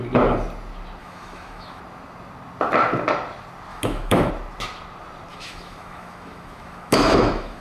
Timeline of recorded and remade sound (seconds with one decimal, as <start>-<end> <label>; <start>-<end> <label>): 0.0-1.0 recorded; 1.0-1.8 remade; 1.8-3.7 recorded; 3.7-4.3 remade; 4.3-5.3 recorded; 5.3-7.6 remade

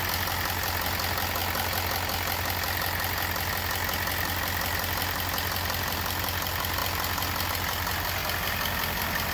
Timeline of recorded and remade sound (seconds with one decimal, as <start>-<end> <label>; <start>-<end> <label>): 0.0-9.3 recorded

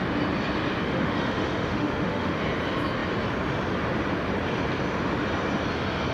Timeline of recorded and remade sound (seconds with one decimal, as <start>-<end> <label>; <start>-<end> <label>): 0.0-0.8 recorded; 0.8-2.4 remade; 2.4-6.1 recorded

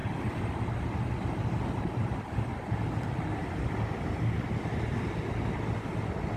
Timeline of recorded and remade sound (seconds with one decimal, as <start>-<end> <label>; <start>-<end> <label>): 0.0-6.4 recorded

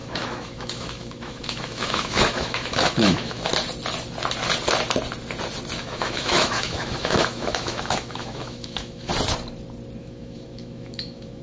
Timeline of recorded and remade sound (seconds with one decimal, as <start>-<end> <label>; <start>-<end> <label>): 0.0-3.5 remade; 3.5-5.8 recorded; 5.8-9.1 remade; 9.1-10.0 recorded; 10.0-11.4 remade

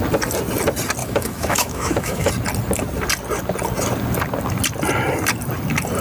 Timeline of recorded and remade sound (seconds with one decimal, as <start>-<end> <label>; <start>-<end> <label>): 0.0-1.0 recorded; 1.0-2.3 remade; 2.3-6.0 recorded

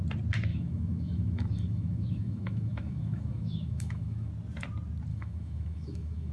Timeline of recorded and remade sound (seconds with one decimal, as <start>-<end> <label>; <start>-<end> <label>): 0.0-0.5 recorded; 0.5-4.3 remade; 4.3-5.1 recorded; 5.1-6.3 remade